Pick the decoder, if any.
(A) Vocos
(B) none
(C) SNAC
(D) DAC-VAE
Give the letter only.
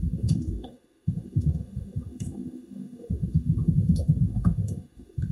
D